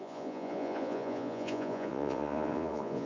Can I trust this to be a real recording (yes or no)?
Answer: no